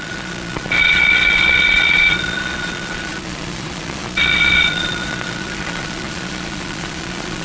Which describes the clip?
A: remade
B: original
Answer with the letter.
A